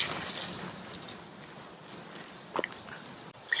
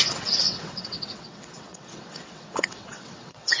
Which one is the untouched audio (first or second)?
first